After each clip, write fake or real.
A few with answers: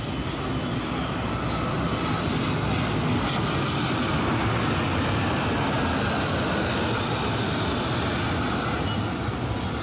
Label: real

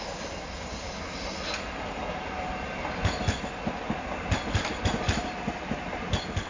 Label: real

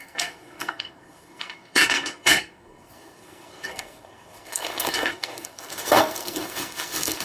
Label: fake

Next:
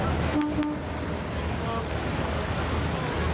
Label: real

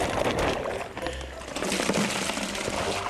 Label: real